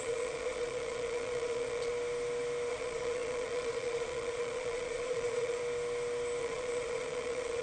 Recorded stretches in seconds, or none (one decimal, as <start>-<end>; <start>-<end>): 1.9-2.7; 5.6-6.4